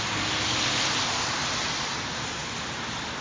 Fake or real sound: real